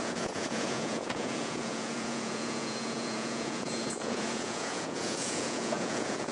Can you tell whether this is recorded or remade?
remade